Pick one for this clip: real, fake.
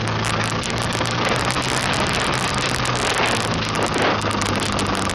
real